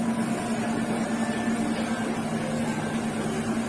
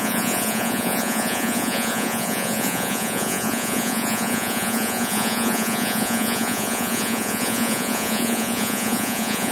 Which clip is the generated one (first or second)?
second